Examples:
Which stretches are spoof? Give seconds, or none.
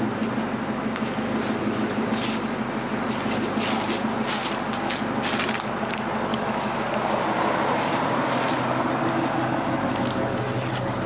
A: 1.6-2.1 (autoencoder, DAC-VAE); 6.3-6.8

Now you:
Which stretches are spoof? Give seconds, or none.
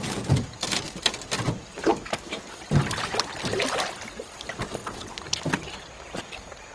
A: 1.9-2.4 (autoencoder, DAC-VAE)